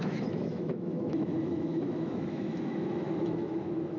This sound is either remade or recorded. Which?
remade